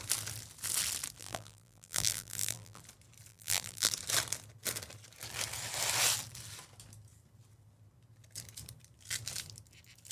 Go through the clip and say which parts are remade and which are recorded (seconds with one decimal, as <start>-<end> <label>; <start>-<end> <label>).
0.0-1.2 recorded; 1.2-2.8 remade; 2.8-3.3 recorded; 3.3-3.9 remade; 3.9-10.1 recorded